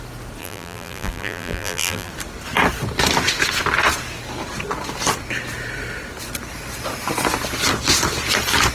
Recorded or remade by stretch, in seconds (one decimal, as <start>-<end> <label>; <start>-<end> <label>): 0.0-0.4 recorded; 0.4-2.1 remade; 2.1-8.7 recorded